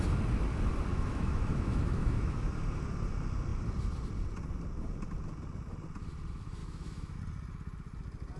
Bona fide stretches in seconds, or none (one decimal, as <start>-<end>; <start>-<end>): 0.0-0.9; 2.5-6.6; 7.2-8.4